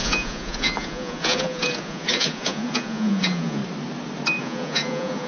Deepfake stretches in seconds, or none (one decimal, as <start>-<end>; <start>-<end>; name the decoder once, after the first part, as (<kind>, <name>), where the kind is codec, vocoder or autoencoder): 0.0-3.6 (vocoder, Vocos); 4.4-5.3